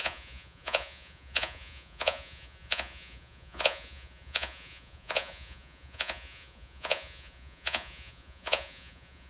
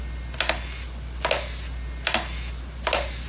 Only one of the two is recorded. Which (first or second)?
second